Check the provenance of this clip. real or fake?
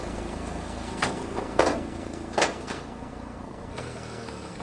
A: fake